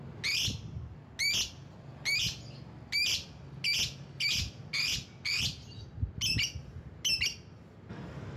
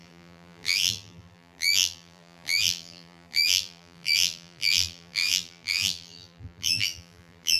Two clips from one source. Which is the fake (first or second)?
second